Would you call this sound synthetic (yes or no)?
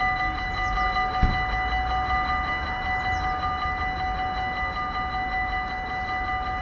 no